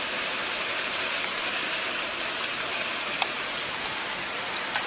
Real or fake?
fake